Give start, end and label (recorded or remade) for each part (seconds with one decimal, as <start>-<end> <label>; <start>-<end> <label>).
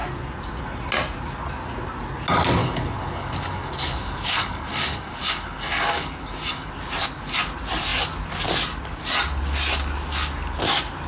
0.0-2.6 recorded; 2.6-6.7 remade; 6.7-11.1 recorded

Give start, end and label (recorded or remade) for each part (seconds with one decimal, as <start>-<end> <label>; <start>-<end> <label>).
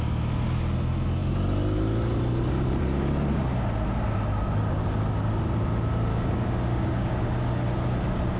0.0-6.1 recorded; 6.1-7.1 remade; 7.1-8.4 recorded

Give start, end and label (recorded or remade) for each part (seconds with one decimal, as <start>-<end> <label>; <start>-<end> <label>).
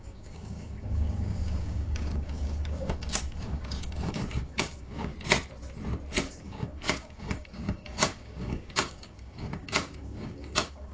0.0-5.1 remade; 5.1-6.3 recorded; 6.3-10.9 remade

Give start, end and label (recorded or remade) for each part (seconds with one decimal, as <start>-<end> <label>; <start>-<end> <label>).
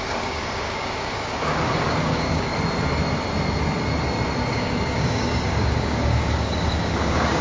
0.0-2.5 remade; 2.5-4.5 recorded; 4.5-7.4 remade